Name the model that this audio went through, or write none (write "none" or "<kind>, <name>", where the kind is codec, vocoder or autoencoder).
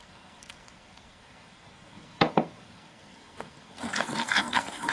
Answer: codec, SNAC